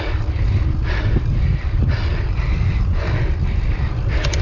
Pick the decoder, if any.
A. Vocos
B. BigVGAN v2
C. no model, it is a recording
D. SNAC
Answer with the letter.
C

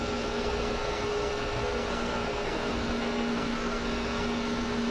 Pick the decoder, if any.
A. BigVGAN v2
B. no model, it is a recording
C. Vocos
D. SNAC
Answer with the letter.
D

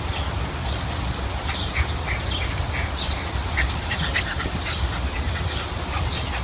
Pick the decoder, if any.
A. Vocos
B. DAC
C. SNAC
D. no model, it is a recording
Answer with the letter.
D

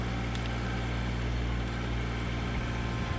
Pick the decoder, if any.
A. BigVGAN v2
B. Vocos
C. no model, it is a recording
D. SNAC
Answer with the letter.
C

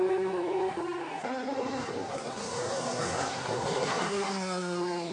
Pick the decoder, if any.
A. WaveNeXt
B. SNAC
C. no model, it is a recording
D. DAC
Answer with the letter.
B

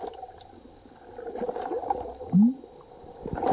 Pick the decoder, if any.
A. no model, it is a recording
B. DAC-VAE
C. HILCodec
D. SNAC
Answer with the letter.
A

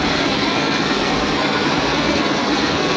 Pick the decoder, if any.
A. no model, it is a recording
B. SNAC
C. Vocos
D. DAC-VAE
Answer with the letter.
B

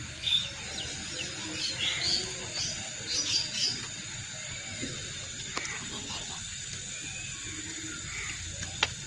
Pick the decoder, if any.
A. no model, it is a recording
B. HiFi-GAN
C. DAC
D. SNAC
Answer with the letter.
A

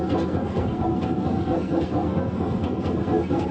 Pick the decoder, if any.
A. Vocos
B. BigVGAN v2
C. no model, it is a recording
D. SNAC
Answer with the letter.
D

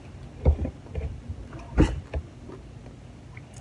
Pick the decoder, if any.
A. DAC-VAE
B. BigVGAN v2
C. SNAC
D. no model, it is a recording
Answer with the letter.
D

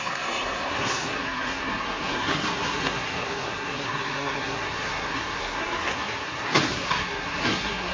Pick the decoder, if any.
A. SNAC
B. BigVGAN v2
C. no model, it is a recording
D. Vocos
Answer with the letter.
A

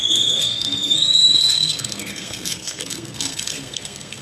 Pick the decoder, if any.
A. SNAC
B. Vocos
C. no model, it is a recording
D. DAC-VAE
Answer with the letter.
A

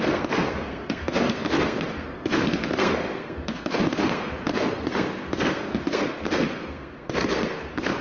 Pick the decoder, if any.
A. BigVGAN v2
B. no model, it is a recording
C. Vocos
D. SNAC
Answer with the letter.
D